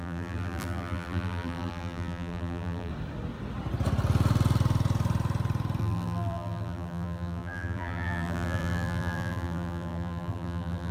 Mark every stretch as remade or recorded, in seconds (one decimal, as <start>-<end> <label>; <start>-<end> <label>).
0.0-2.9 remade; 2.9-5.8 recorded; 5.8-10.9 remade